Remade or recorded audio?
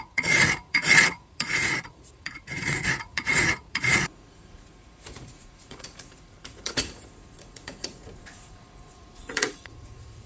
remade